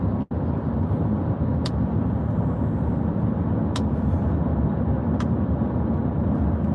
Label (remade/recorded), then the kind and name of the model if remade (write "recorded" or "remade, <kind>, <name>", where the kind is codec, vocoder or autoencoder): recorded